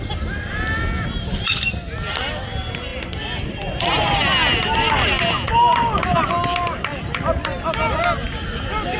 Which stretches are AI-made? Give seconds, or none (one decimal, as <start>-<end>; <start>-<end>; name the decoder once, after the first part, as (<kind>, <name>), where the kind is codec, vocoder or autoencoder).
none